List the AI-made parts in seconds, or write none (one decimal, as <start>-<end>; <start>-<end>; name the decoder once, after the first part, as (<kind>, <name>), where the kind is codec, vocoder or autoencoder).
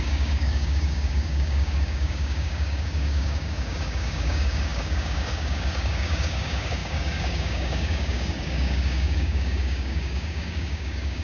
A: 0.0-11.2 (codec, DAC)